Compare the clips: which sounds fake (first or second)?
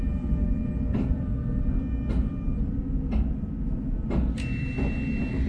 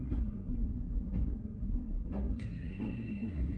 second